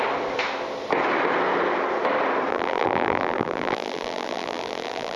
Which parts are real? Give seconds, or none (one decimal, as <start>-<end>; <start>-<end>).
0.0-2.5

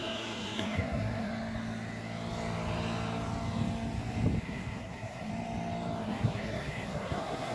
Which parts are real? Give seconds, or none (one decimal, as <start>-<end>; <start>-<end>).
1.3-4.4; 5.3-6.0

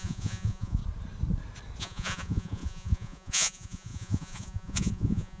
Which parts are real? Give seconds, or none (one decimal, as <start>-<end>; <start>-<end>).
0.8-1.8